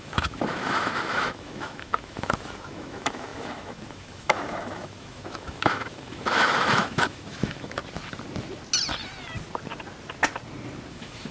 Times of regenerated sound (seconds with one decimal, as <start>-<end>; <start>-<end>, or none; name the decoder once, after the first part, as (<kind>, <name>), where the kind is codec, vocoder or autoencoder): 0.0-7.8 (autoencoder, DAC-VAE); 10.9-11.3